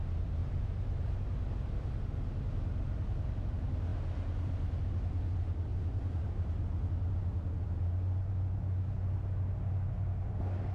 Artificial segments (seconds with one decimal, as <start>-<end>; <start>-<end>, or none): 0.4-1.2; 5.7-6.9